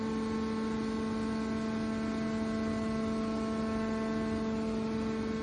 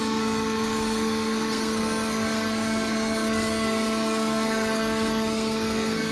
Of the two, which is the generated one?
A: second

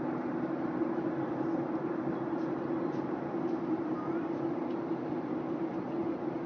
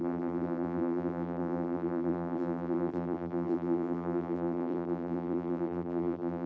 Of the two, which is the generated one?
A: second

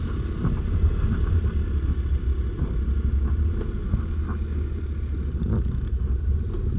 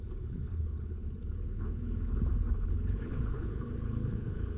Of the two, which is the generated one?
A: second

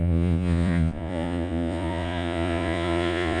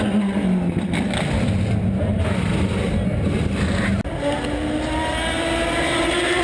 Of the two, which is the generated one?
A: first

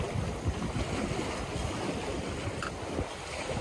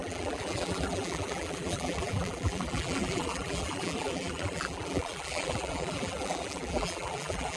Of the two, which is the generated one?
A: second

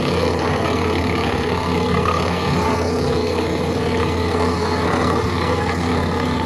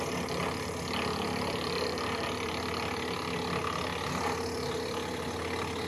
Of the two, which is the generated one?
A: first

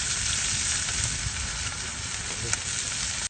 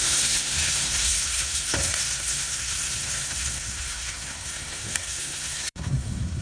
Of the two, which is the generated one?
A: second